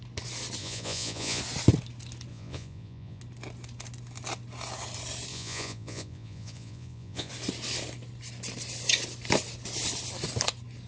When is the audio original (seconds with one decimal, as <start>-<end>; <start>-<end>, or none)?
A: 0.0-0.6; 1.4-2.3; 3.2-5.3; 7.3-10.9